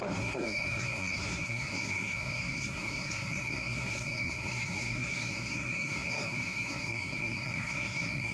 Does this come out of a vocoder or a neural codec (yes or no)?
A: yes